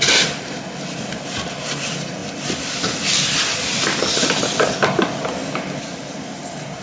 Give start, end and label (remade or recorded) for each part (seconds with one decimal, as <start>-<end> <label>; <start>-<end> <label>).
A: 0.0-6.8 recorded